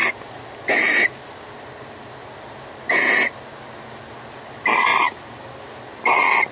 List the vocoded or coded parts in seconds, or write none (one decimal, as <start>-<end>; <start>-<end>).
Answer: none